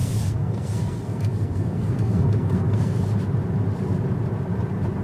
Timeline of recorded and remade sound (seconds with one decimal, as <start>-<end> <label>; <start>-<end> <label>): 0.0-3.0 remade; 3.0-5.0 recorded